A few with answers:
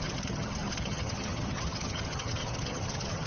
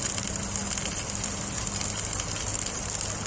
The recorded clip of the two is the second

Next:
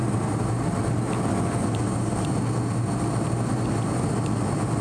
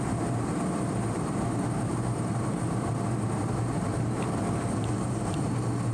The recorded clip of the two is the first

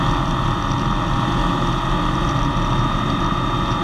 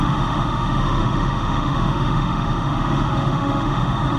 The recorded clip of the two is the first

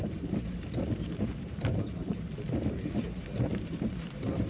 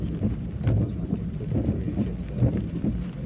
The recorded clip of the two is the second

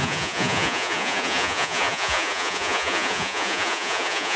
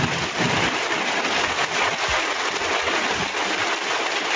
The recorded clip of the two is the second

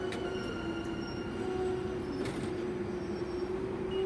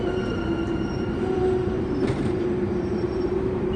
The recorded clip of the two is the first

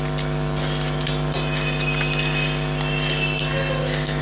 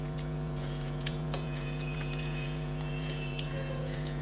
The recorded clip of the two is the first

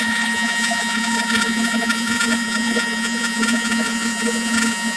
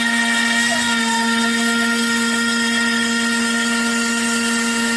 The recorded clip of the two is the second